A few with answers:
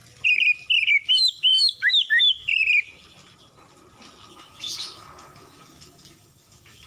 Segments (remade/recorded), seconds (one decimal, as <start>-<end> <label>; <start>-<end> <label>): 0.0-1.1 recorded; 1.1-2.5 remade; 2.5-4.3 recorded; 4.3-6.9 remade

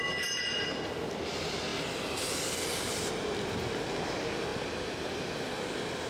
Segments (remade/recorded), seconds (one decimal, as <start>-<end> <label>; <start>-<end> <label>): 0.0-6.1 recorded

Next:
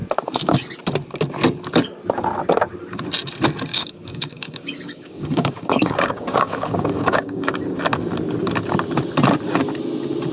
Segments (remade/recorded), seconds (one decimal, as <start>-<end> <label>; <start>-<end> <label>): 0.0-3.7 recorded; 3.7-7.5 remade; 7.5-10.3 recorded

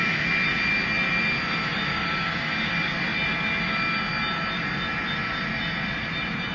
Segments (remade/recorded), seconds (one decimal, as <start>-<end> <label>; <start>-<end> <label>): 0.0-1.9 recorded; 1.9-2.5 remade; 2.5-6.5 recorded

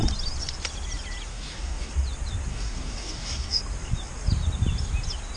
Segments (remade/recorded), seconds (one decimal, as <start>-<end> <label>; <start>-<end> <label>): 0.0-1.3 recorded; 1.3-1.9 remade; 1.9-2.5 recorded; 2.5-3.6 remade; 3.6-5.4 recorded